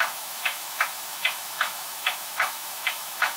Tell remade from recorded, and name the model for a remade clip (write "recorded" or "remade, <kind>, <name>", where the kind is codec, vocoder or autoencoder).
remade, autoencoder, DAC-VAE